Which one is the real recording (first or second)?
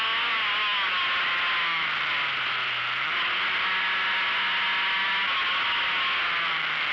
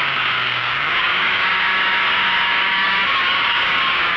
first